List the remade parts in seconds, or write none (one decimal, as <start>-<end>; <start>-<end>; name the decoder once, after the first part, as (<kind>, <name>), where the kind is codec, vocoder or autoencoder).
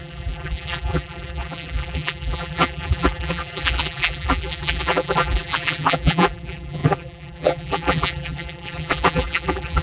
0.0-9.8 (vocoder, BigVGAN v2)